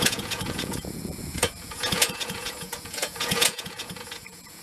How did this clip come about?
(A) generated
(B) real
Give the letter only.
A